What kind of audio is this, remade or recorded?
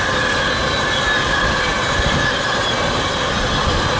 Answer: recorded